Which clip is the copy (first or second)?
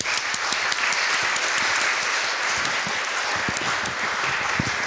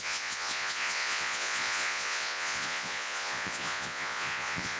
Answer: second